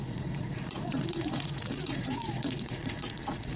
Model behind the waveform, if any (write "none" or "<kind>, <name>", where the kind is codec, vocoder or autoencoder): vocoder, Vocos